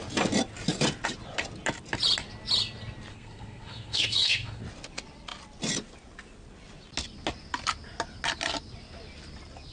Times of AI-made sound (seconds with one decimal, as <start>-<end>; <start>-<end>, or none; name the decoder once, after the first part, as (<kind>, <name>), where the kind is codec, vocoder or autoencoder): 3.1-4.6 (codec, SNAC)